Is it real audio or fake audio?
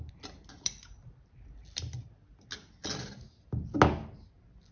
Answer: real